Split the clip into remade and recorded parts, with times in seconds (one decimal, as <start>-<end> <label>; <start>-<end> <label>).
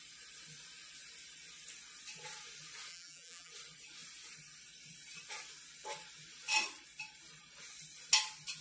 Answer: 0.0-2.9 recorded; 2.9-3.5 remade; 3.5-8.6 recorded